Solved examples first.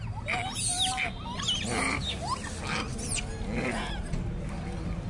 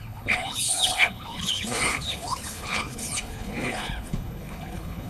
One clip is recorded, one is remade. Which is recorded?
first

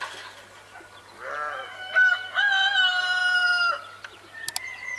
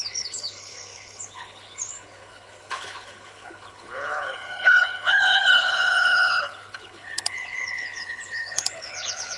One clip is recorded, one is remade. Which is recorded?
first